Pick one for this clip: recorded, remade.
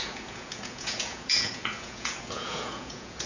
remade